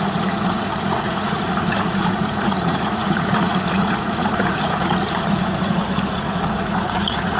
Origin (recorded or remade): remade